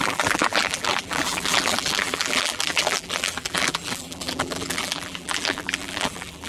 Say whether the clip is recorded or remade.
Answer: remade